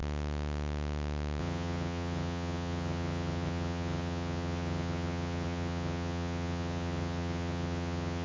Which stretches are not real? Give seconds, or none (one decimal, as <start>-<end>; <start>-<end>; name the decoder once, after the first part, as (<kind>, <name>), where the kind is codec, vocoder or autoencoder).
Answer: 1.4-8.2 (vocoder, HiFi-GAN)